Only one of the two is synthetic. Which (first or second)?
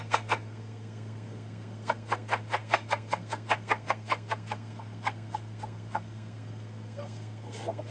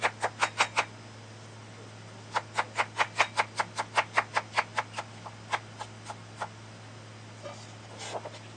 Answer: first